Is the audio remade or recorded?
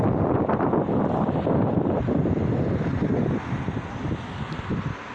recorded